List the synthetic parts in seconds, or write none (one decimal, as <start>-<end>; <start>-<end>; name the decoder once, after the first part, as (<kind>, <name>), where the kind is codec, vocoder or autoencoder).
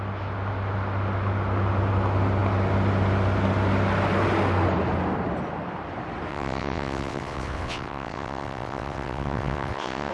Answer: 6.3-10.1 (vocoder, WaveNeXt)